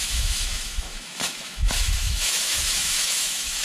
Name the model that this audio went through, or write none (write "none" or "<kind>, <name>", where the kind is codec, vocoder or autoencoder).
autoencoder, DAC-VAE